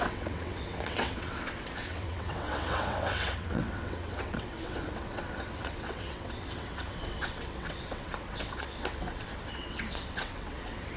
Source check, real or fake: fake